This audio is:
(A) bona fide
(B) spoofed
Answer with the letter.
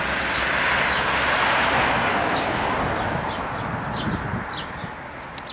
A